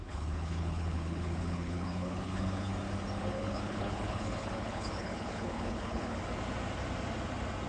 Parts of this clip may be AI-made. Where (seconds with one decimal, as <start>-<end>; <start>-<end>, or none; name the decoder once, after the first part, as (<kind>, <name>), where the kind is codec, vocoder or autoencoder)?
0.0-2.7 (codec, HILCodec); 3.2-6.2